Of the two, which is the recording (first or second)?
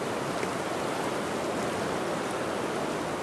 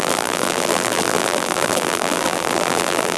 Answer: first